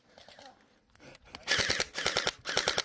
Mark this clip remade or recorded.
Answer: recorded